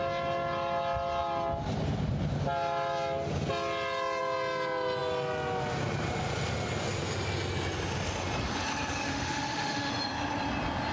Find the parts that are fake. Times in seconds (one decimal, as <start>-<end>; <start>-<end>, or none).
9.1-9.9